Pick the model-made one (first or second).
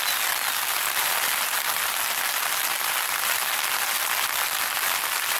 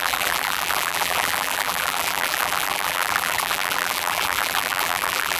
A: second